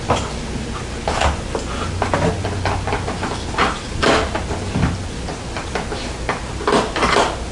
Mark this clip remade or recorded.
recorded